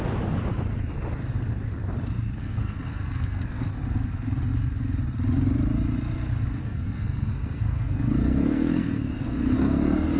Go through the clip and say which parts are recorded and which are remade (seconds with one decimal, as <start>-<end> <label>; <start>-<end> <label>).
0.0-2.4 recorded; 2.4-3.7 remade; 3.7-6.6 recorded; 6.6-10.2 remade